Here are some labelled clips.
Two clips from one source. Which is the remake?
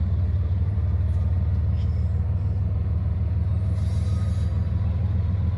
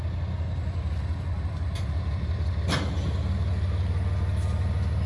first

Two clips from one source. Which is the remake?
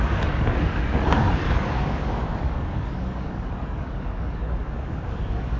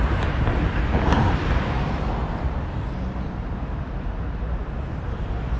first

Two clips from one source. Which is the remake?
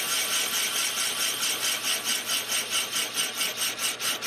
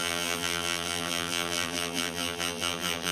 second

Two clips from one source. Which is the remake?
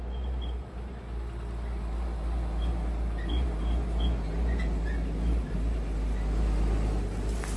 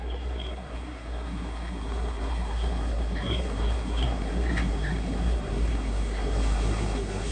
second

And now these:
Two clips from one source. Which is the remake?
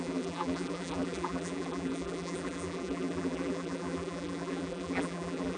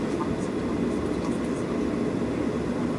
first